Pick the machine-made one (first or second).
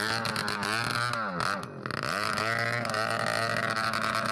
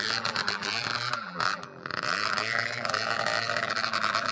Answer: second